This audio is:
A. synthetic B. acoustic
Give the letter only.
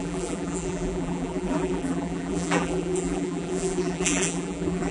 A